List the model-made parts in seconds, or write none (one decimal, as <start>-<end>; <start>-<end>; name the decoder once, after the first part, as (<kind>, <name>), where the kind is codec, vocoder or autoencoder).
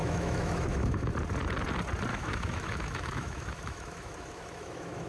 0.0-1.1 (autoencoder, DAC-VAE); 2.1-5.1